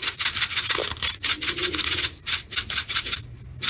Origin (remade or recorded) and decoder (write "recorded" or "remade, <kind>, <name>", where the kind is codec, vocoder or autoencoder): recorded